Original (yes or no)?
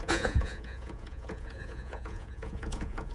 no